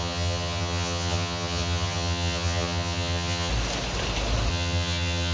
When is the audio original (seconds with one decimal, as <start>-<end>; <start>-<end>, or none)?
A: 3.5-4.5